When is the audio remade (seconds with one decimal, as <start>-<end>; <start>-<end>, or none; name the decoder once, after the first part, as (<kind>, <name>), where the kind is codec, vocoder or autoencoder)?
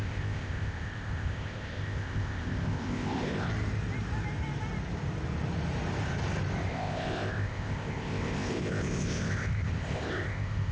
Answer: 0.0-3.5 (codec, ZipCodec); 6.7-10.7